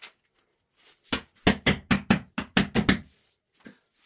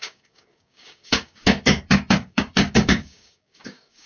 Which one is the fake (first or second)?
second